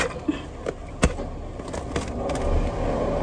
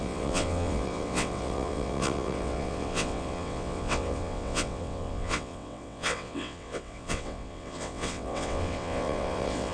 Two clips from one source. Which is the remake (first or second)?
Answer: second